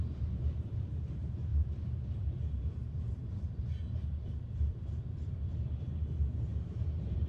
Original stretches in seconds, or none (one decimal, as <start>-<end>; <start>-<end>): none